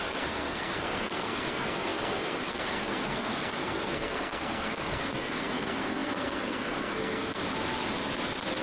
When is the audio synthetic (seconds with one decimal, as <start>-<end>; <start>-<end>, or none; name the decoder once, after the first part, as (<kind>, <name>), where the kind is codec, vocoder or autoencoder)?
0.0-7.4 (codec, SNAC)

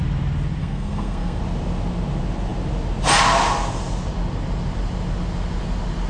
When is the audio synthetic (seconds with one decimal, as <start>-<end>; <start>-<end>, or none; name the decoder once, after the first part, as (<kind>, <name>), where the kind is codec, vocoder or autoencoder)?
0.6-1.4 (codec, SNAC)

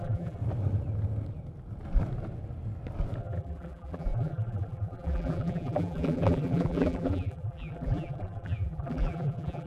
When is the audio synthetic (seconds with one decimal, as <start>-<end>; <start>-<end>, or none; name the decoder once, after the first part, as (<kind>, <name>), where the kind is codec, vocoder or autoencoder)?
0.0-0.4 (vocoder, BigVGAN v2); 3.2-9.7